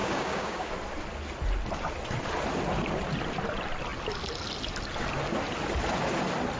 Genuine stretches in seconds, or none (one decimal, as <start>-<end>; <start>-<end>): 0.7-6.6